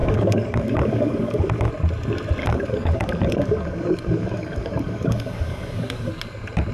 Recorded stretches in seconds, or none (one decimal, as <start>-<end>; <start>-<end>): 1.7-2.4; 6.1-6.7